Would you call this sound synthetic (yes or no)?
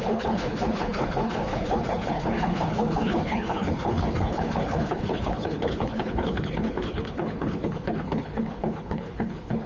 yes